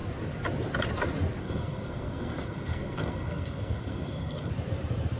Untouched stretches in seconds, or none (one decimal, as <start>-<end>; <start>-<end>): 0.0-1.4; 4.5-5.2

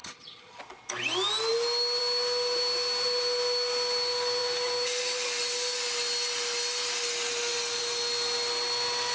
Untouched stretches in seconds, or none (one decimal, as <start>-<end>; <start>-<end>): 0.6-9.1

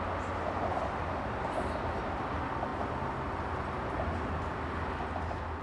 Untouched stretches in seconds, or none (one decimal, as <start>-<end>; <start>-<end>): 0.0-5.6

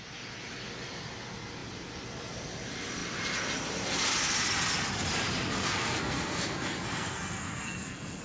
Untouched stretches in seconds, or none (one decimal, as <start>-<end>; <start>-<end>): 0.0-5.6

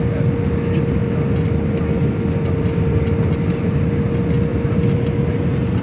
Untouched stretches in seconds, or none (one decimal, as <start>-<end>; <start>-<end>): 0.0-4.5

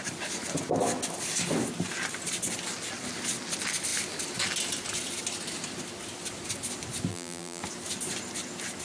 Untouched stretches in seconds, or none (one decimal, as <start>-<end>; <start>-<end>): 0.0-7.1; 7.6-8.8

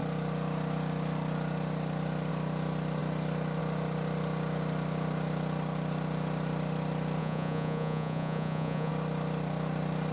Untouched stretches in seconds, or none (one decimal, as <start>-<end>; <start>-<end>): 0.0-7.2; 8.9-10.1

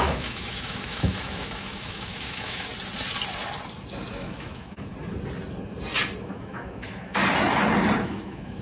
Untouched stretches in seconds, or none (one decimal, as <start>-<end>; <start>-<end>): 2.7-4.1; 4.9-6.2; 7.2-8.0